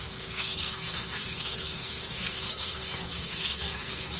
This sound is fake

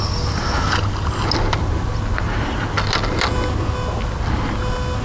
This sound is real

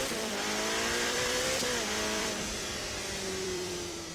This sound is fake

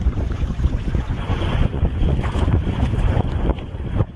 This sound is fake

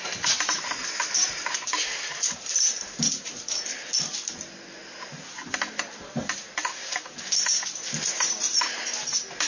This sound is real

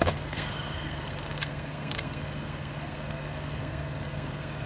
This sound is fake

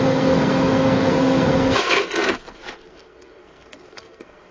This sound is fake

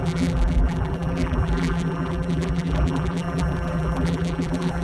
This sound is fake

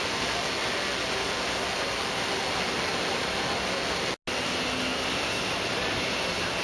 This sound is real